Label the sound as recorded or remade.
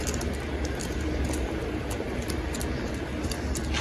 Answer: recorded